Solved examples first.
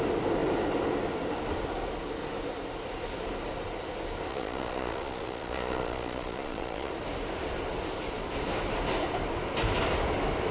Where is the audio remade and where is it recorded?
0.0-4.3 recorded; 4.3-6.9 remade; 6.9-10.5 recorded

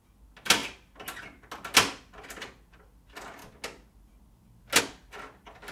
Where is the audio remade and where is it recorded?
0.0-5.7 recorded

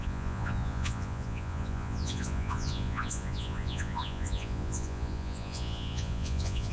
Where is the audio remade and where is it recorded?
0.0-6.7 remade

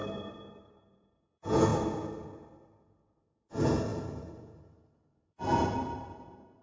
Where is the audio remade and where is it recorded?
0.0-0.8 recorded; 0.8-1.7 remade; 1.7-2.8 recorded; 2.8-6.6 remade

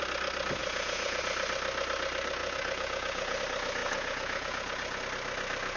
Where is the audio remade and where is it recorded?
0.0-0.6 recorded; 0.6-1.2 remade; 1.2-2.4 recorded; 2.4-3.4 remade; 3.4-3.8 recorded; 3.8-5.0 remade; 5.0-5.8 recorded

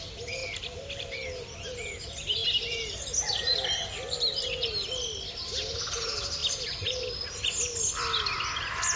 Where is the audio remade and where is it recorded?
0.0-9.0 recorded